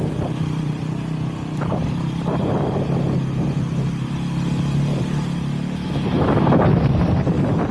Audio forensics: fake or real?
real